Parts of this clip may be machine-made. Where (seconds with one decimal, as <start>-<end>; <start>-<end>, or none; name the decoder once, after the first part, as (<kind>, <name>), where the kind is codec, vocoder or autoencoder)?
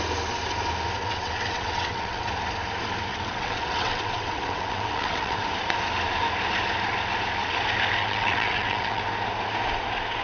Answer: 1.0-2.3 (vocoder, WaveNeXt); 3.1-5.4; 8.0-9.0